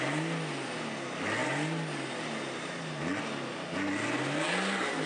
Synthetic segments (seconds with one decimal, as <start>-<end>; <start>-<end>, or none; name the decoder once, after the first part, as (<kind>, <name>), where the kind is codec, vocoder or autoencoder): none